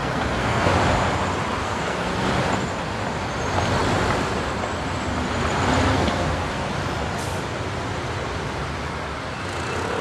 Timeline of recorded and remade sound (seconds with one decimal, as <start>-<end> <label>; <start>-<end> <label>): 0.0-0.7 remade; 0.7-1.6 recorded; 1.6-2.3 remade; 2.3-5.9 recorded; 5.9-6.7 remade; 6.7-10.0 recorded